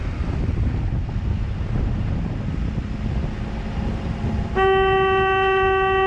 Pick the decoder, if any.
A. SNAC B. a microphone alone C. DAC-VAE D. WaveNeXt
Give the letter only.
B